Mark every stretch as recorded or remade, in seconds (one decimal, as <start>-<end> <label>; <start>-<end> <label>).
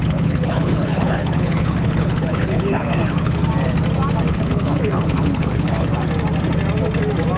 0.0-3.4 remade; 3.4-4.3 recorded; 4.3-5.9 remade; 5.9-7.4 recorded